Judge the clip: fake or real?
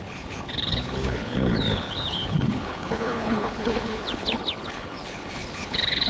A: fake